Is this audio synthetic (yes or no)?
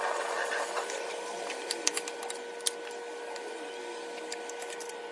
no